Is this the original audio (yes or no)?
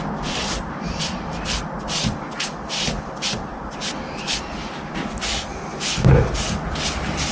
no